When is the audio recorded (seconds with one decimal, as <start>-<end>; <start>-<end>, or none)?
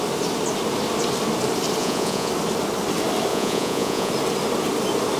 0.0-1.8; 2.3-3.3; 4.1-5.2